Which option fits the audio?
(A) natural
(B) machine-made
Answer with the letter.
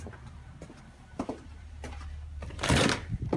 B